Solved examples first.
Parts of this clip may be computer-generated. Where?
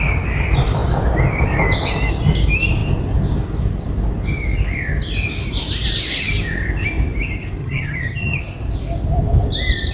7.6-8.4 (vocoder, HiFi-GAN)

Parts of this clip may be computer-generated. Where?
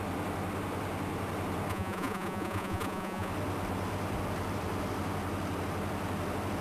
1.7-3.3 (vocoder, Vocos)